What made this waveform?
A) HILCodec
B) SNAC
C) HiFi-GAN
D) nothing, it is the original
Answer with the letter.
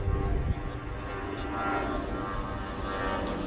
D